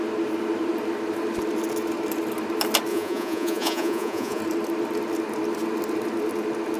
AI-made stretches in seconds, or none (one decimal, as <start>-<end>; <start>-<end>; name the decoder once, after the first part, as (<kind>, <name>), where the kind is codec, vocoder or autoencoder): 2.9-4.4 (vocoder, Vocos)